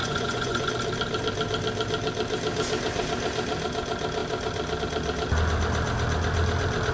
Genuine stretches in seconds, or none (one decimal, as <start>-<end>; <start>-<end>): 0.7-6.9